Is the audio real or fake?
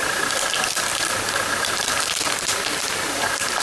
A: fake